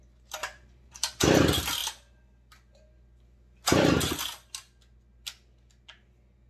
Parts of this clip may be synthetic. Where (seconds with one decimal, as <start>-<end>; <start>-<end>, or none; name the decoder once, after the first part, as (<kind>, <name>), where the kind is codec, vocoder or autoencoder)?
0.4-1.2 (vocoder, BigVGAN v2)